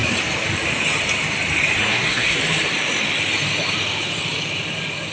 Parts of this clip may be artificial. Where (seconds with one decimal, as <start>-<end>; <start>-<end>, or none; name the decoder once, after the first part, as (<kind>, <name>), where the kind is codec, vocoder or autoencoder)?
1.8-2.4 (codec, SNAC)